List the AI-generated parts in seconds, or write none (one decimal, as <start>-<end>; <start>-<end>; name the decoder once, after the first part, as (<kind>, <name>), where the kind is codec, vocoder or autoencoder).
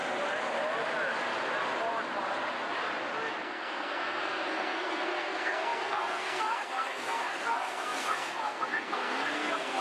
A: 3.4-9.8 (codec, SNAC)